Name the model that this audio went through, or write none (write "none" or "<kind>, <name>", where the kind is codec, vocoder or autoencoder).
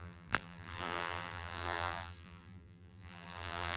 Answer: vocoder, BigVGAN v2